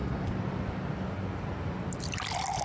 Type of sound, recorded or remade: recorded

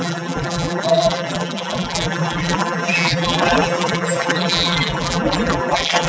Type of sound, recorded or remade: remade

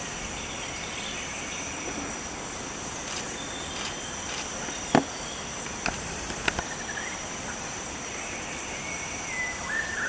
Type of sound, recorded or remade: recorded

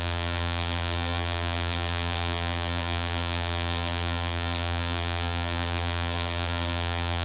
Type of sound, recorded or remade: remade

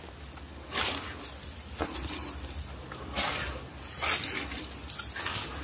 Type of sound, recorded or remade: recorded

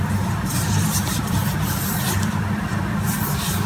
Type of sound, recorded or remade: remade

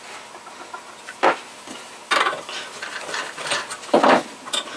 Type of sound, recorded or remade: remade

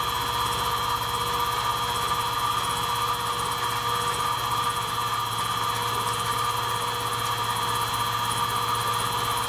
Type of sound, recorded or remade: recorded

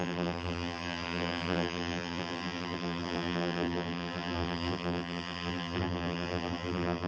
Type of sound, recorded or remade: remade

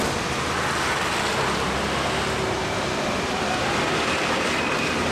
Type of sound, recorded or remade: recorded